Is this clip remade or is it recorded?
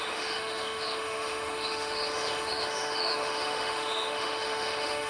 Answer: remade